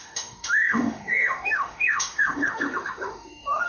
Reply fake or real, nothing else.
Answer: fake